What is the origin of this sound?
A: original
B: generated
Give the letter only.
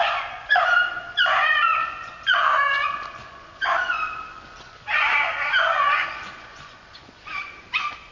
B